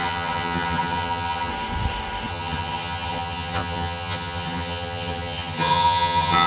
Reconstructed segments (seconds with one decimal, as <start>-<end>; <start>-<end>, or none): 0.0-1.5; 2.3-6.5

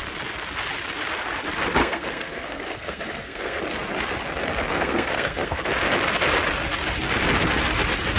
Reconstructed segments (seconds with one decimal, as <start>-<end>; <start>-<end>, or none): 1.8-3.6; 4.7-5.6

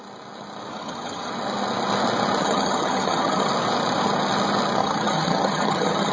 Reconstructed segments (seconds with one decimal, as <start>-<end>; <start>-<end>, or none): 0.7-1.3; 2.4-3.5; 4.8-6.1

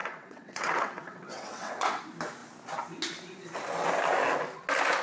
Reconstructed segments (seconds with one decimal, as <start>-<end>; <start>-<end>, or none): 0.0-2.0

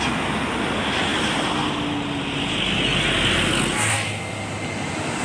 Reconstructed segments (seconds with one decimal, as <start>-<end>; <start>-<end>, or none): none

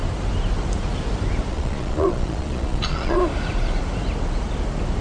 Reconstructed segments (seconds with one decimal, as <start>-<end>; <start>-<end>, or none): 1.5-3.2

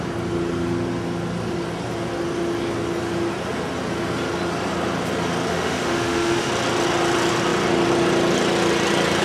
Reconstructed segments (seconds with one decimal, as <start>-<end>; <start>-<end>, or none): 5.5-6.5

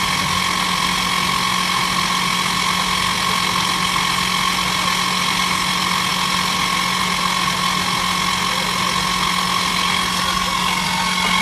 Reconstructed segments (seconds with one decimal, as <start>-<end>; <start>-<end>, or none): none